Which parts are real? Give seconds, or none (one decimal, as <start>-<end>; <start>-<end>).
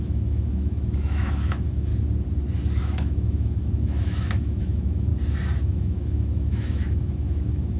1.9-2.8; 5.1-5.6